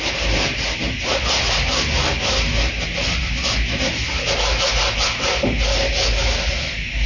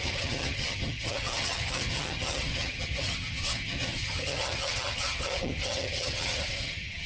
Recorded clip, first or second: first